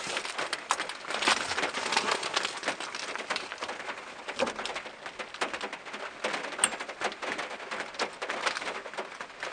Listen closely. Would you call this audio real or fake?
real